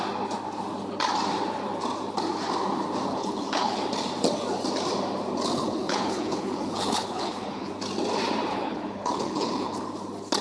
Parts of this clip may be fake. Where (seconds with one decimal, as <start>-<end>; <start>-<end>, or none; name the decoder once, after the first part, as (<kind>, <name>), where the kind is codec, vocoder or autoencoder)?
3.1-3.8 (codec, HILCodec); 5.5-7.7; 8.5-9.8